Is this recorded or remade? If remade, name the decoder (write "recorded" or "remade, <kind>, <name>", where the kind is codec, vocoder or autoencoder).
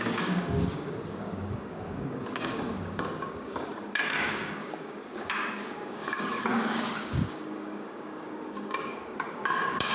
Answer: remade, codec, DAC